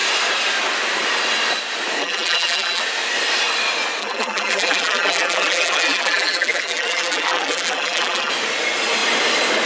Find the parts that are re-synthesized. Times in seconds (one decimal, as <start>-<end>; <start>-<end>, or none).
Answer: 2.0-2.8; 4.0-8.3